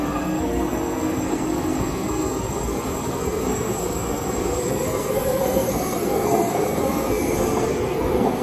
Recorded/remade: remade